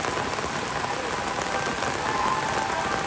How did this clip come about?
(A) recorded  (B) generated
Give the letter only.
A